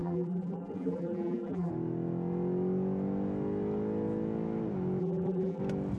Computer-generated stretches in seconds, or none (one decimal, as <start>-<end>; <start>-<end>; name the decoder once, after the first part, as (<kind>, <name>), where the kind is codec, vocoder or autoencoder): 0.0-1.7 (vocoder, BigVGAN v2); 5.0-5.6